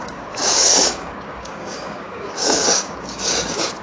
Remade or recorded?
remade